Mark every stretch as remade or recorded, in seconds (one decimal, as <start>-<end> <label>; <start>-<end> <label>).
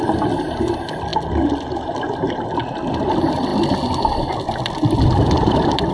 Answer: 0.0-5.9 recorded